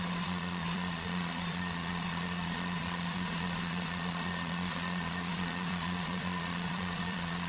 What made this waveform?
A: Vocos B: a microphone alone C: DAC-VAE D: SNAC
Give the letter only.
A